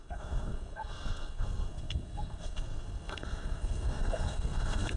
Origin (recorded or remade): remade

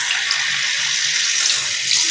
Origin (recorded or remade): recorded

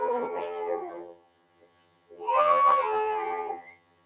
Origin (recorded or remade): remade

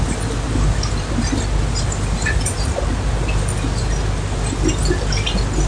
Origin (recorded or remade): recorded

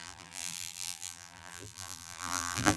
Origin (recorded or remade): remade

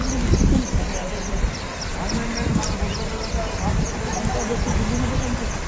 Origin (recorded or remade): recorded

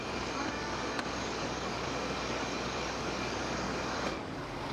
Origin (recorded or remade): remade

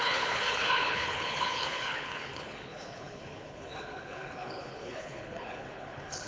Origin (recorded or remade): remade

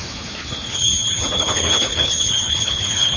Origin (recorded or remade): remade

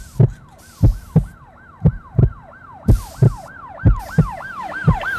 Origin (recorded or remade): recorded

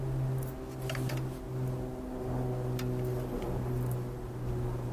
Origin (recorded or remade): recorded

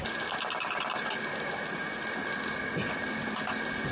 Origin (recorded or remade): recorded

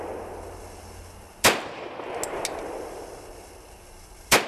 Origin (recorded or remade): recorded